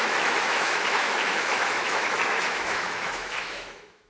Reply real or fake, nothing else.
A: fake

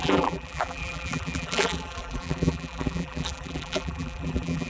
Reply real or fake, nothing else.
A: fake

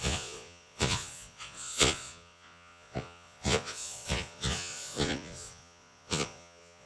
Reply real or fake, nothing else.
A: fake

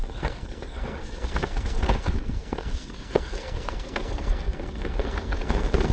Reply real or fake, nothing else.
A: fake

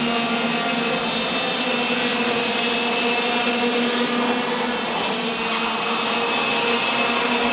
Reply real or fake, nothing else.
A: real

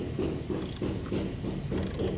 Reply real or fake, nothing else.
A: real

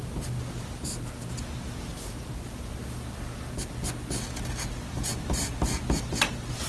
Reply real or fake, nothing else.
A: real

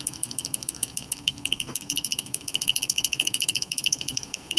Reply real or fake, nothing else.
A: fake